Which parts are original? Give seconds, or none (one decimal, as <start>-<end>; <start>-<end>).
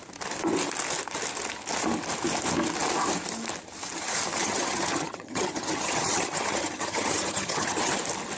0.0-4.4; 8.0-8.4